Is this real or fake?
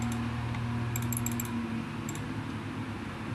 real